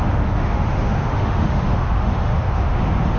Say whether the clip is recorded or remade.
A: remade